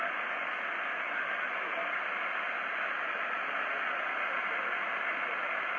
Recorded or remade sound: recorded